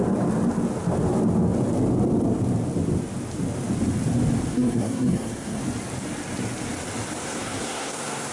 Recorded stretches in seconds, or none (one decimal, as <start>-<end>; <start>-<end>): 0.0-4.5; 5.6-7.2